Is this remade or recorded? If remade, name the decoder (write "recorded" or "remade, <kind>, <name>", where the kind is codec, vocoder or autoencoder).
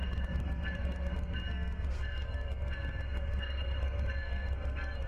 remade, codec, SNAC